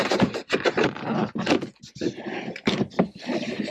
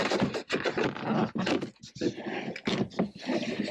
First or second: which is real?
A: second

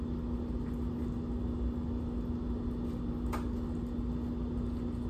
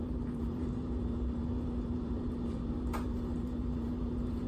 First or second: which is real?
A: first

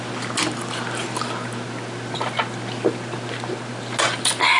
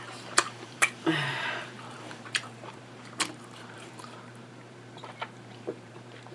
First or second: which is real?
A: first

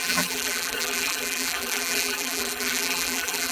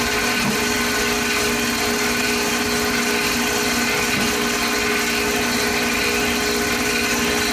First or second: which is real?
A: second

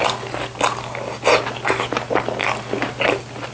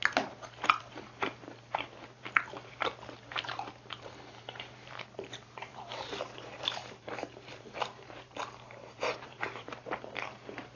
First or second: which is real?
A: first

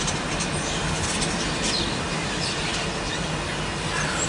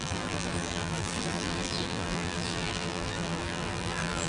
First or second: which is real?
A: first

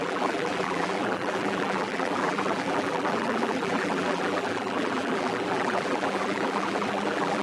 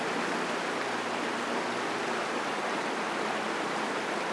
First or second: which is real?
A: second